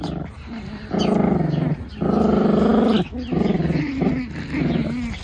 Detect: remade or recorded recorded